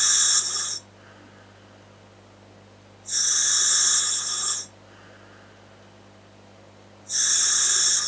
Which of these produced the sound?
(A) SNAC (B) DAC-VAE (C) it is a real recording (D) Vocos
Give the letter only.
C